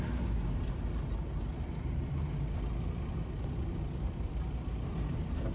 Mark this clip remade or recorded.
recorded